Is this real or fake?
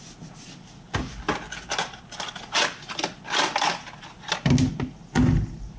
real